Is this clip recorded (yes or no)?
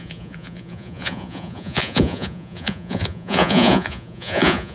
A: no